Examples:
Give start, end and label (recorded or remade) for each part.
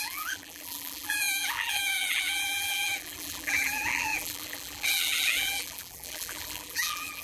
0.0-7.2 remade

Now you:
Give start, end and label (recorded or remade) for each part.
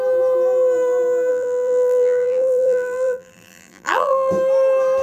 0.0-1.3 recorded; 1.3-4.3 remade; 4.3-5.0 recorded